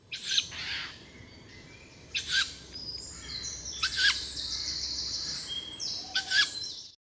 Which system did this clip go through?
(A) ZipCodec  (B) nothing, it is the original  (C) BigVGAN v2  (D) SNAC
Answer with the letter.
C